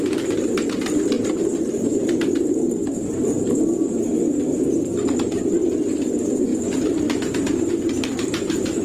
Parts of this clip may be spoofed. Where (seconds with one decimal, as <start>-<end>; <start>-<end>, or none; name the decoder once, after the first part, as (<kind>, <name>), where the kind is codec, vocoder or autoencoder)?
none